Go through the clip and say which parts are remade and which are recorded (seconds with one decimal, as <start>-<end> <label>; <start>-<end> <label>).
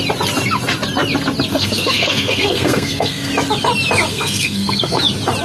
0.0-1.5 recorded; 1.5-3.3 remade; 3.3-4.1 recorded; 4.1-5.0 remade; 5.0-5.4 recorded